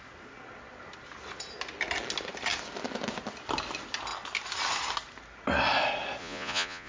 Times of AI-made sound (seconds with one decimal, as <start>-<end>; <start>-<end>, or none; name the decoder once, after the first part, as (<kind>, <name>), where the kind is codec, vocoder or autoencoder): 6.2-6.9 (vocoder, Vocos)